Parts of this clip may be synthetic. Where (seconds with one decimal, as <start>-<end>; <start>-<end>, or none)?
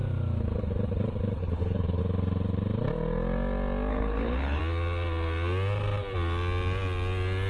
1.4-2.0; 3.9-4.6